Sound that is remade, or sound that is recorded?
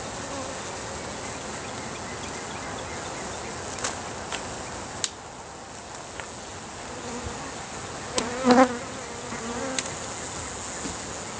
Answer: recorded